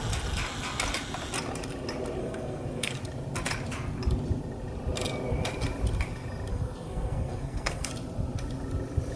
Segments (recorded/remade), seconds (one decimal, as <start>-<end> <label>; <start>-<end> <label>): 0.0-2.2 recorded; 2.2-2.9 remade; 2.9-6.5 recorded; 6.5-7.9 remade; 7.9-9.2 recorded